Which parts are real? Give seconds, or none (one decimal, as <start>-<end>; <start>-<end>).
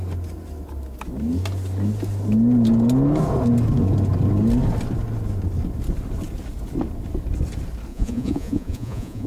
0.0-7.9